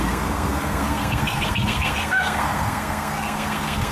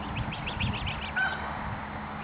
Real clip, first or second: second